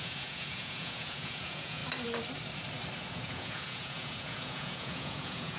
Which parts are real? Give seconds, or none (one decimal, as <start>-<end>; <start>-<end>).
1.8-3.1